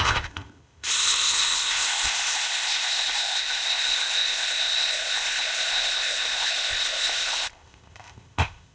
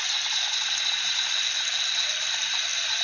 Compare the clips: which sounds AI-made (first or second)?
first